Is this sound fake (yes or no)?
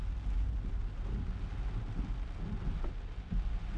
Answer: no